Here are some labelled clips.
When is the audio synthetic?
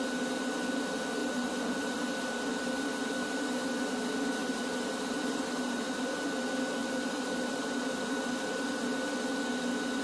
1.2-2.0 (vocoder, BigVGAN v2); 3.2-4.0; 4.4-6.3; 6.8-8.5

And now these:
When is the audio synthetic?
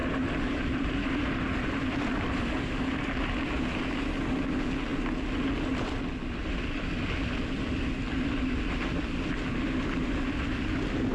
0.0-2.4 (vocoder, BigVGAN v2)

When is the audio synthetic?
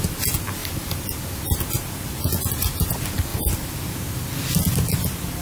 none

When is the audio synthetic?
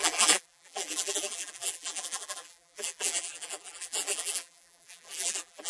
0.0-5.7 (vocoder, BigVGAN v2)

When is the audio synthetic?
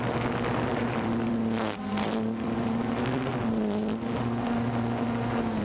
0.7-2.8 (vocoder, BigVGAN v2)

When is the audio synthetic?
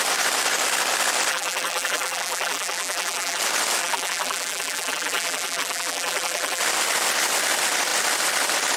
1.3-3.4 (vocoder, BigVGAN v2); 3.8-6.6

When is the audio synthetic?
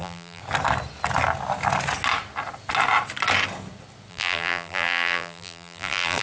0.0-0.4 (vocoder, BigVGAN v2); 4.1-6.2